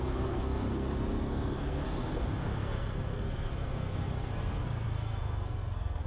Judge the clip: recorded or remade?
remade